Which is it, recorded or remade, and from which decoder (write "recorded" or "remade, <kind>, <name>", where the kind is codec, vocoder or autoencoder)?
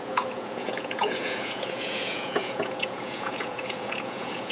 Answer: remade, vocoder, Vocos